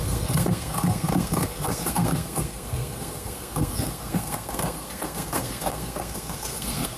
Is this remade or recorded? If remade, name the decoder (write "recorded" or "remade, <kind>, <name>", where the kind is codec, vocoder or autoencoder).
remade, codec, SNAC